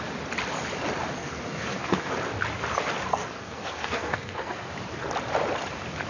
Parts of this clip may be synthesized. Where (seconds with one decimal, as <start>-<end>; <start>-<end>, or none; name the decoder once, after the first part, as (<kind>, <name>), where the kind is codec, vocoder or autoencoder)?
1.2-2.1 (codec, SNAC); 3.1-4.7